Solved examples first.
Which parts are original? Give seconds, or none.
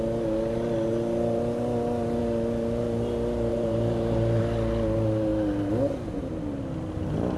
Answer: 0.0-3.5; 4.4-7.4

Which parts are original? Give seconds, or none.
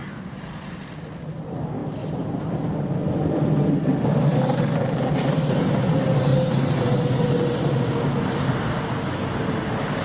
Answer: 0.7-6.3; 6.8-10.0